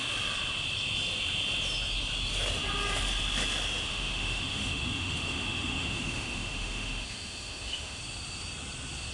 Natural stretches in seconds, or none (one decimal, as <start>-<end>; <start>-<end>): 0.0-3.9; 8.0-9.1